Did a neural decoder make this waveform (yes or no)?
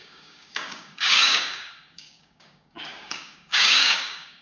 yes